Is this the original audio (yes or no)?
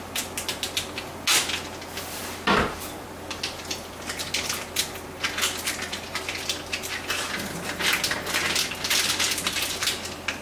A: yes